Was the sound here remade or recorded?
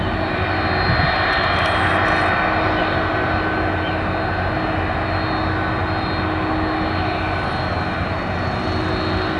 recorded